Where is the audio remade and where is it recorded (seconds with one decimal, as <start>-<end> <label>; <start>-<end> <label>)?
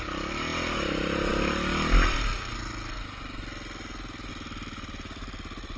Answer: 0.0-5.8 recorded